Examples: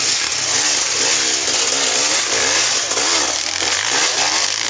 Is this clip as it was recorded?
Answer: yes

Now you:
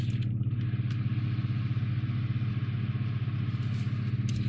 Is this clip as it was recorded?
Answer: yes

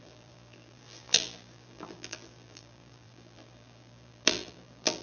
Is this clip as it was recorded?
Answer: no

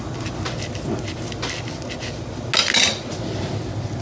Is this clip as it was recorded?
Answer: yes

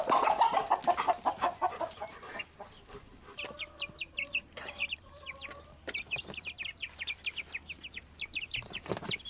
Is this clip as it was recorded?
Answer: no